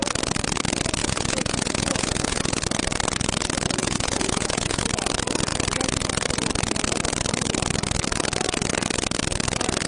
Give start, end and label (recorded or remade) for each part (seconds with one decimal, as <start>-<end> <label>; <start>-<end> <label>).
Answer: 0.0-1.0 recorded; 1.0-2.6 remade; 2.6-3.8 recorded; 3.8-4.8 remade; 4.8-9.9 recorded